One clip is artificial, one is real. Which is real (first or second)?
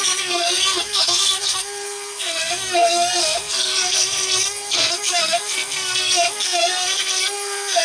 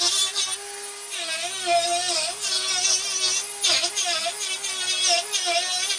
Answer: second